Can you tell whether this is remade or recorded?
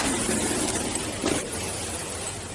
recorded